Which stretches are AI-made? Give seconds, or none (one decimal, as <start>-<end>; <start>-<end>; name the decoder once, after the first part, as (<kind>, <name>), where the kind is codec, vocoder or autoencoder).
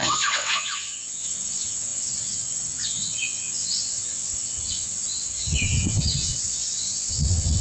0.0-7.6 (vocoder, WaveNeXt)